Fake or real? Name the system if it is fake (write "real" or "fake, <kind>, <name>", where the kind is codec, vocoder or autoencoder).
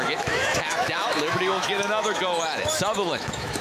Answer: fake, autoencoder, DAC-VAE